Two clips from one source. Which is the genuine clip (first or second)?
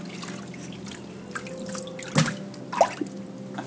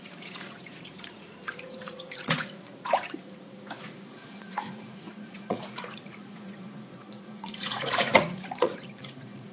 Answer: first